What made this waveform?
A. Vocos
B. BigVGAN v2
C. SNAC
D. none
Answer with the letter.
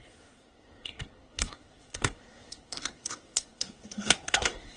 C